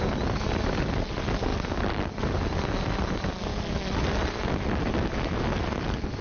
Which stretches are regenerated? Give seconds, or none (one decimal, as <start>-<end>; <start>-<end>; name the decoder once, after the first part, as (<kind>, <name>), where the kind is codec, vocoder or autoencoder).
none